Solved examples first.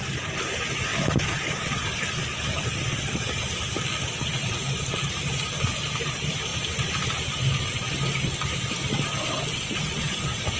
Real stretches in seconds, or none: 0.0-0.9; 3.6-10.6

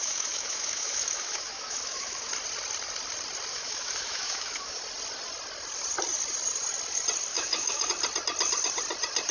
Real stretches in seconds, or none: 2.3-3.5; 4.8-7.3; 7.9-9.3